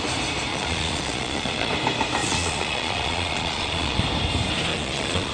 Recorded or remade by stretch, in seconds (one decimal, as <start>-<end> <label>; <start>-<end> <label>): 0.0-0.5 recorded; 0.5-1.7 remade; 1.7-2.2 recorded; 2.2-4.0 remade; 4.0-4.7 recorded; 4.7-5.3 remade